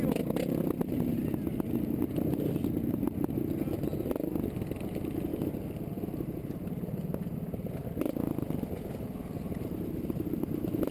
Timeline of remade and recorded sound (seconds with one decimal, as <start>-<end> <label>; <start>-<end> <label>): 0.0-10.9 recorded